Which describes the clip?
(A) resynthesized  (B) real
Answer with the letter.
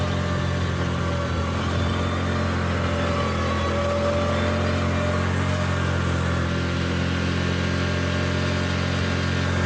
B